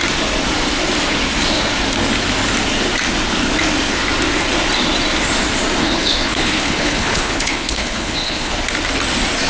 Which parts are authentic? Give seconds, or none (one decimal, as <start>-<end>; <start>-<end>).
0.0-5.8; 8.5-9.5